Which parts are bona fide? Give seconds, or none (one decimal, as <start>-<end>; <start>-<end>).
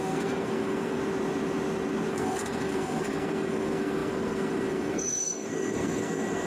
1.0-2.1